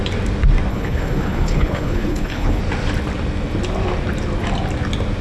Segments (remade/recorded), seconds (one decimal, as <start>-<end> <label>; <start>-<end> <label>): 0.0-0.7 recorded; 0.7-2.6 remade; 2.6-5.2 recorded